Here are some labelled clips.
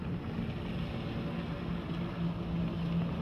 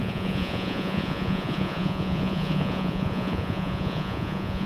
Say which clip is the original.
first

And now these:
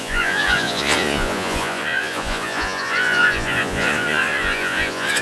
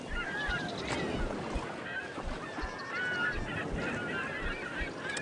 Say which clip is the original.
second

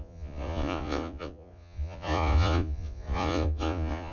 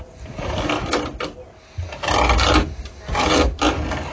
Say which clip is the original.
second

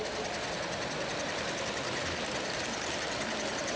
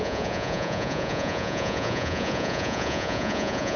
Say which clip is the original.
first